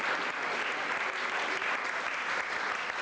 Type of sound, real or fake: real